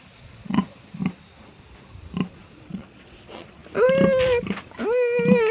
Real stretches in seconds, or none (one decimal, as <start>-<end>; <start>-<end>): 1.0-2.4; 3.6-5.5